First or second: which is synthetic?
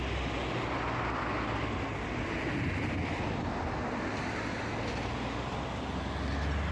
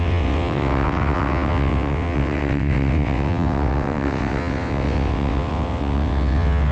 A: second